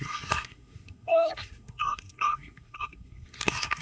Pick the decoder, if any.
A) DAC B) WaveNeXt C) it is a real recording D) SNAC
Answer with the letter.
D